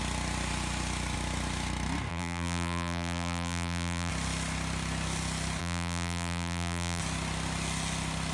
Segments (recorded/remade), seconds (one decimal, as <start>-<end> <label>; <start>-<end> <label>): 0.0-2.1 recorded; 2.1-4.1 remade; 4.1-5.6 recorded; 5.6-7.0 remade; 7.0-8.3 recorded